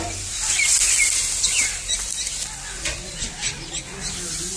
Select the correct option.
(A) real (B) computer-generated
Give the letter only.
A